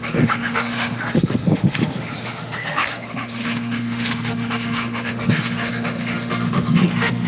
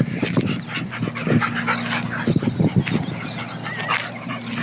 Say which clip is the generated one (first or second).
first